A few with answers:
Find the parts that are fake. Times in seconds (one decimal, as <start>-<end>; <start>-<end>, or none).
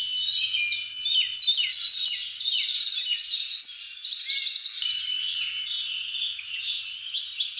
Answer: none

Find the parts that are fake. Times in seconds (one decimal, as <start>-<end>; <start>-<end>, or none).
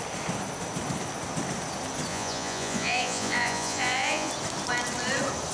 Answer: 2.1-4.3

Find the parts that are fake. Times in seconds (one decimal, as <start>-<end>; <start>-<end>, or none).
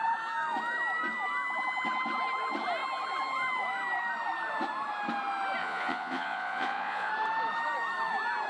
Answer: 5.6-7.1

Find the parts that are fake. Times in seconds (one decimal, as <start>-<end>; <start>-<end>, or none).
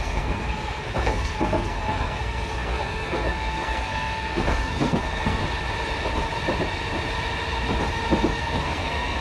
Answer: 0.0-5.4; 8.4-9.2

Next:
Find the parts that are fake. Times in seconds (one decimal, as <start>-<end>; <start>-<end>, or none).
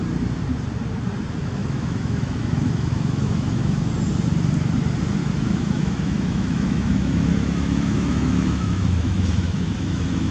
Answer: 1.4-3.9; 5.2-10.3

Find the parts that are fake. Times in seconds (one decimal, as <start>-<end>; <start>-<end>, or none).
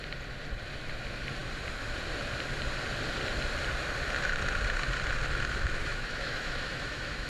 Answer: 5.8-7.3